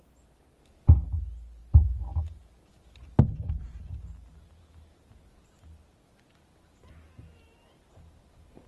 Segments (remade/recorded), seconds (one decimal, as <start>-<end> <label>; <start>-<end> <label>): 0.0-1.6 recorded; 1.6-2.5 remade; 2.5-3.3 recorded; 3.3-3.9 remade; 3.9-8.7 recorded